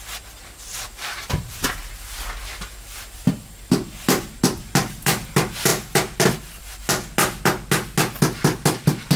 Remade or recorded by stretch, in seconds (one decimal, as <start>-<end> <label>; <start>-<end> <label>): 0.0-0.4 recorded; 0.4-1.8 remade; 1.8-9.2 recorded